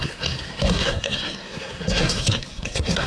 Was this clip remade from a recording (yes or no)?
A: yes